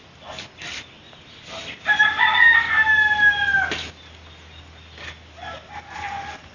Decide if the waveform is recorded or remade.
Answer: recorded